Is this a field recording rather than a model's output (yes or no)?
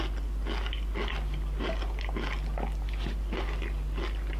yes